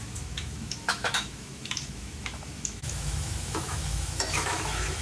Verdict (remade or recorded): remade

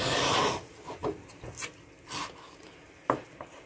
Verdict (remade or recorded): recorded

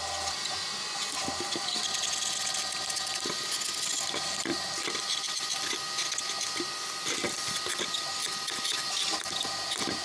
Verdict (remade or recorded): recorded